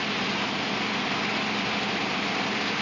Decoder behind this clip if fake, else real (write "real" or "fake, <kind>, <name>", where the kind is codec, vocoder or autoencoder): real